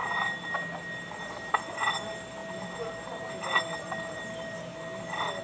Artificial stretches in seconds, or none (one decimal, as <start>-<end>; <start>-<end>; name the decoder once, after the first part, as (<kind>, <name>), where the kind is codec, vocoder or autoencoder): none